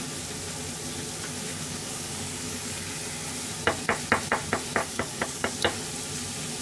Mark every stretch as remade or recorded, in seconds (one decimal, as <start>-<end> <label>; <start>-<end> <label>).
0.0-1.5 recorded; 1.5-2.9 remade; 2.9-4.8 recorded; 4.8-5.6 remade; 5.6-6.6 recorded

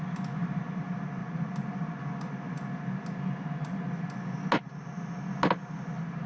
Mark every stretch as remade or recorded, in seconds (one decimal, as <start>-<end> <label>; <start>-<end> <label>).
0.0-6.3 recorded

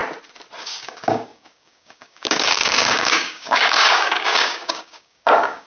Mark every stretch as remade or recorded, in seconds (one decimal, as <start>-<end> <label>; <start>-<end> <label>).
0.0-0.6 recorded; 0.6-5.7 remade

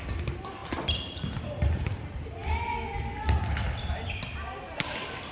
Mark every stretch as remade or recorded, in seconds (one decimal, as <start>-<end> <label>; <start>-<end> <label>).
0.0-5.3 recorded